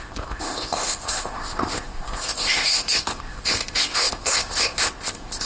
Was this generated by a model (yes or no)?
yes